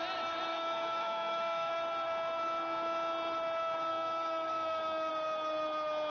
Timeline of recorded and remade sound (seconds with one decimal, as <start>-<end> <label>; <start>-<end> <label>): 0.0-0.5 recorded; 0.5-1.7 remade; 1.7-3.9 recorded; 3.9-5.1 remade; 5.1-6.1 recorded